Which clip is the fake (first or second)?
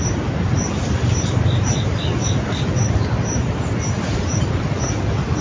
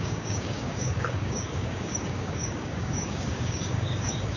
second